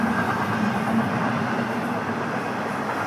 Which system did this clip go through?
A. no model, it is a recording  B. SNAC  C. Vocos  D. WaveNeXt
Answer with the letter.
A